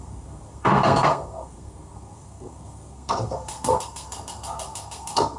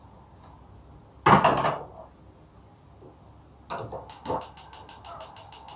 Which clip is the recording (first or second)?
second